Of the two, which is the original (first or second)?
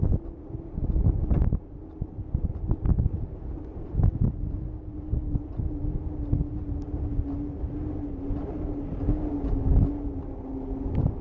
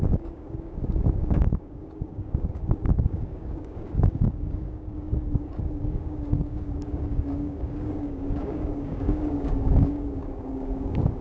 first